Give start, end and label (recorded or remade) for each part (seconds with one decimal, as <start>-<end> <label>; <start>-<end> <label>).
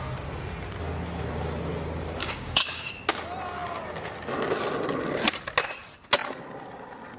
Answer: 0.0-2.2 recorded; 2.2-2.9 remade; 2.9-7.2 recorded